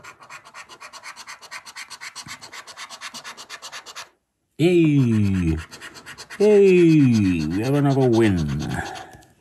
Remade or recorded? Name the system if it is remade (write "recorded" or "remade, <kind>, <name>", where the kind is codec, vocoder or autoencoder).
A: recorded